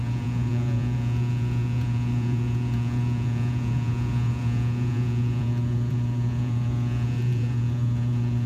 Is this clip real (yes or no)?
no